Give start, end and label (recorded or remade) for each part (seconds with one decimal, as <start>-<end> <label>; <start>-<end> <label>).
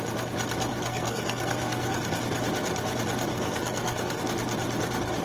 0.0-0.7 recorded; 0.7-2.2 remade; 2.2-3.3 recorded; 3.3-4.2 remade; 4.2-5.2 recorded